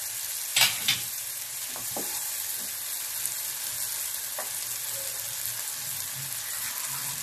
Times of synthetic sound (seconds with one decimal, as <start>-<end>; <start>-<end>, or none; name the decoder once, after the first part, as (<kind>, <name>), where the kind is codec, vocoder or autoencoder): 0.5-2.3 (vocoder, BigVGAN v2)